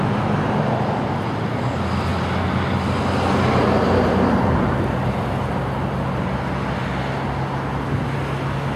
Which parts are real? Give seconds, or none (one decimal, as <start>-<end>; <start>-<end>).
0.0-8.8